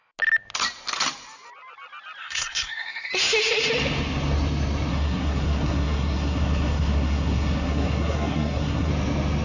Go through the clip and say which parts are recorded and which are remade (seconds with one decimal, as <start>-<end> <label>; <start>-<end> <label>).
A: 0.0-2.2 recorded; 2.2-3.1 remade; 3.1-4.9 recorded; 4.9-8.9 remade; 8.9-9.4 recorded